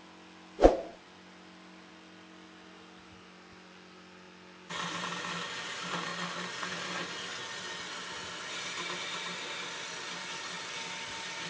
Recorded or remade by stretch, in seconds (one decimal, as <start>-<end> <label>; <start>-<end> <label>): 0.0-11.5 recorded